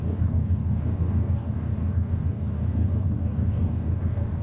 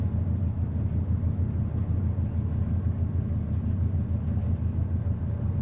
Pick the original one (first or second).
second